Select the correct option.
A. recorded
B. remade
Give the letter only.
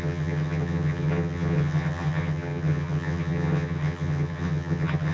B